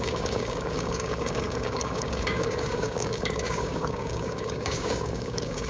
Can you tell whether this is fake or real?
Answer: fake